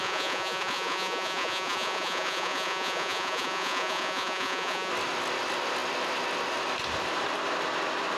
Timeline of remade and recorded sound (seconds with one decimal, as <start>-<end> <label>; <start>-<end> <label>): 0.0-4.9 remade; 4.9-8.2 recorded